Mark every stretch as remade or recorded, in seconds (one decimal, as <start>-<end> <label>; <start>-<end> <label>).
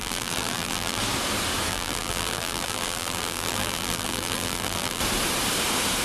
0.0-1.0 remade; 1.0-1.7 recorded; 1.7-5.0 remade; 5.0-6.0 recorded